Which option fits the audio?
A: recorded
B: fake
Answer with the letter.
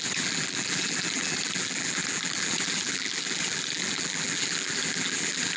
B